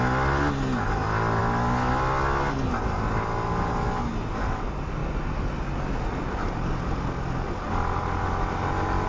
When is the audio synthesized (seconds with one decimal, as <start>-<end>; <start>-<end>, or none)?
none